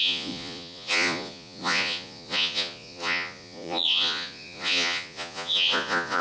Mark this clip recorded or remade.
remade